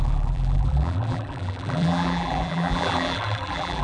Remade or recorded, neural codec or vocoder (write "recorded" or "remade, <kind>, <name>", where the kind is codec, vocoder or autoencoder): remade, vocoder, BigVGAN v2